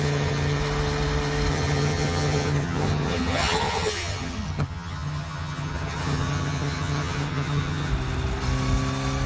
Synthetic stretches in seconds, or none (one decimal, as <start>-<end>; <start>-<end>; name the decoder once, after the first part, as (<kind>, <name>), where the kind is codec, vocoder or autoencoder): 0.0-0.6 (vocoder, HiFi-GAN); 1.5-7.9